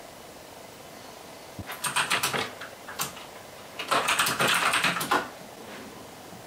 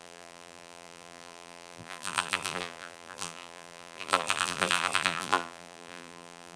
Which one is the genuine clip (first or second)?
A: first